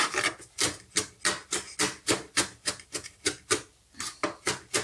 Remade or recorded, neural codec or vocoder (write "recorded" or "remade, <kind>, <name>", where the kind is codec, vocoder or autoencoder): recorded